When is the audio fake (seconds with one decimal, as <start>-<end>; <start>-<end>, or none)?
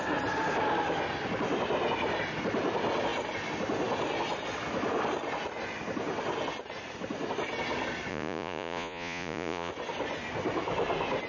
8.1-9.7